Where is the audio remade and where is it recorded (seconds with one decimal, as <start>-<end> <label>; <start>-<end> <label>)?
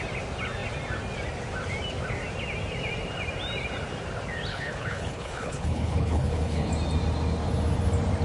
0.0-4.5 recorded; 4.5-6.7 remade; 6.7-8.2 recorded